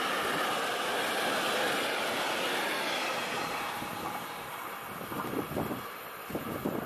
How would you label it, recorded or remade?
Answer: recorded